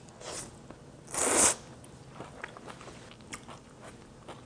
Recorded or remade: recorded